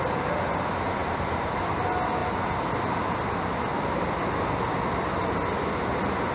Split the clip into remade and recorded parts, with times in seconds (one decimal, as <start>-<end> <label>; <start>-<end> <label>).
0.0-6.3 recorded